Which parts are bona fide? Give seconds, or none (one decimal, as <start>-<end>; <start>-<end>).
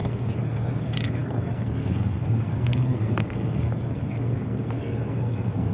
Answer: none